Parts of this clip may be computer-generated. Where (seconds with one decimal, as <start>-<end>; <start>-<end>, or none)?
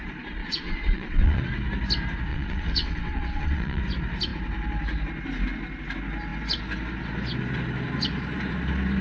0.4-1.4; 2.3-3.8